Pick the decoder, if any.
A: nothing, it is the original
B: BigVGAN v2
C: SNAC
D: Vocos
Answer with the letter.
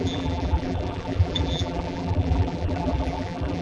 B